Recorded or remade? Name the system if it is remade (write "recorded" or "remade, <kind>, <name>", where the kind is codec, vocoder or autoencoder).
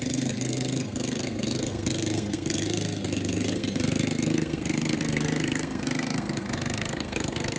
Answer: remade, codec, SNAC